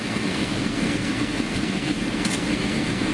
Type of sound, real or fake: fake